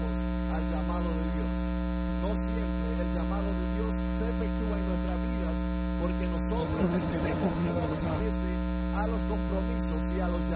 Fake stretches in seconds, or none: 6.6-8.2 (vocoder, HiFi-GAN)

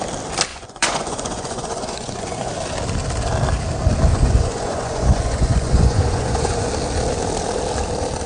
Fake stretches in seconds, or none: 0.5-2.5 (vocoder, Vocos); 4.1-6.7

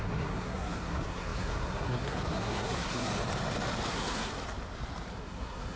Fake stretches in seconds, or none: 0.0-3.1 (codec, SNAC); 3.9-4.3; 5.1-5.8

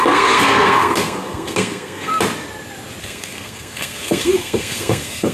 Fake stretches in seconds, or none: 0.0-2.1 (codec, SNAC); 3.0-5.3